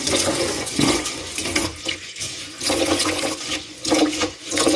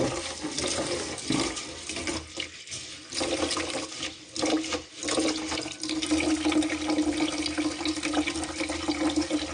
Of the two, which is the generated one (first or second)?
first